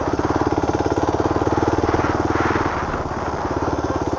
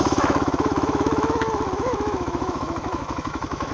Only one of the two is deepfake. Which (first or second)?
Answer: second